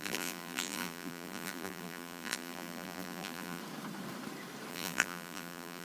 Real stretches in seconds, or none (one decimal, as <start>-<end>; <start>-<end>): 3.6-4.7